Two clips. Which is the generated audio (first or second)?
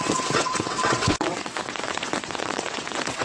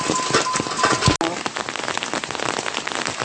first